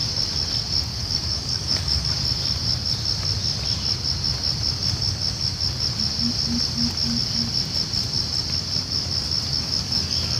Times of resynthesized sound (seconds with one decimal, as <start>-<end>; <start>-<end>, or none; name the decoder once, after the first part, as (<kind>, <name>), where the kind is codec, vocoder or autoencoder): 0.9-2.0 (codec, DAC); 9.5-10.4